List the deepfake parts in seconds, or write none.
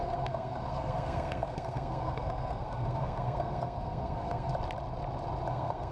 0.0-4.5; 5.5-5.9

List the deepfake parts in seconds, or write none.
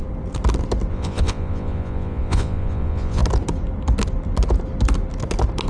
0.9-3.2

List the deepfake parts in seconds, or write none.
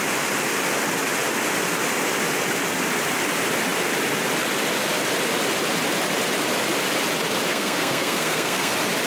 7.5-8.7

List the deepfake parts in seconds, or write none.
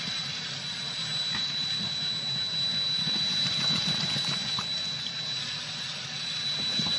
none